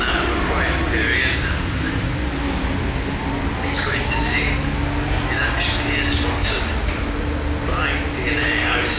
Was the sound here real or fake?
real